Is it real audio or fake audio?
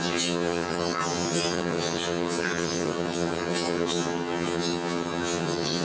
fake